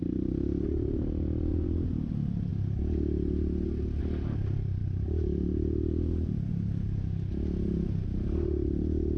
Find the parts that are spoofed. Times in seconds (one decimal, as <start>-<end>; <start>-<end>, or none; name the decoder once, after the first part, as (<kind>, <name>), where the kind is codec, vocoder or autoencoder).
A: 1.5-2.1 (vocoder, BigVGAN v2); 4.8-6.5

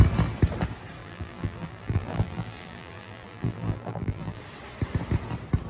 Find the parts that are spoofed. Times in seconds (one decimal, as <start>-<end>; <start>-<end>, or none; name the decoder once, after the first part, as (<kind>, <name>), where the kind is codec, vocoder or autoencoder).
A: 1.0-4.4 (vocoder, BigVGAN v2)

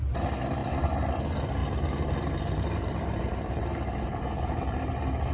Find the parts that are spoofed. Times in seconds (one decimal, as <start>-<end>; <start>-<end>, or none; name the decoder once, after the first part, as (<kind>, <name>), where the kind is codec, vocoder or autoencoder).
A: 0.6-1.1 (vocoder, BigVGAN v2); 1.6-4.8

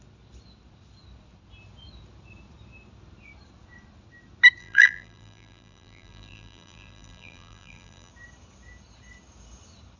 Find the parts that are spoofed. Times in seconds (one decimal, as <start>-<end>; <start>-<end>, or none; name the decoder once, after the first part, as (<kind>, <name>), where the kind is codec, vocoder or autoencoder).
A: 4.6-8.1 (vocoder, BigVGAN v2)

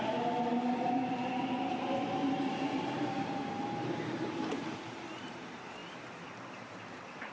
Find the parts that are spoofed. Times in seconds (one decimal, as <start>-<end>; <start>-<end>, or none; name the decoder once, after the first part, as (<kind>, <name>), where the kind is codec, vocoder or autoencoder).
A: 0.0-7.3 (vocoder, BigVGAN v2)

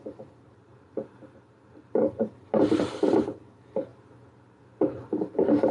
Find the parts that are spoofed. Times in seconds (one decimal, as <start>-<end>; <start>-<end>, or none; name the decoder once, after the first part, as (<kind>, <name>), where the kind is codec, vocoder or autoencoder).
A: 0.0-3.9 (vocoder, BigVGAN v2); 5.2-5.7

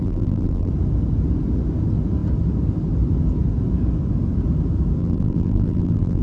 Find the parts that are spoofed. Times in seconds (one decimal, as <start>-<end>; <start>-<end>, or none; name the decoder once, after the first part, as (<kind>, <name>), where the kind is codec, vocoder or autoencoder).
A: 0.0-0.7 (vocoder, BigVGAN v2); 5.0-6.2